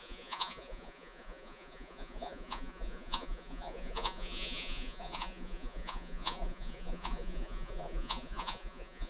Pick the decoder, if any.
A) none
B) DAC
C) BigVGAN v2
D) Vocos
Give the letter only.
D